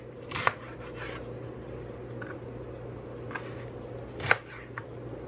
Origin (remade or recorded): recorded